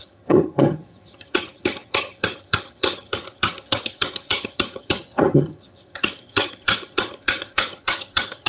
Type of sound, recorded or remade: remade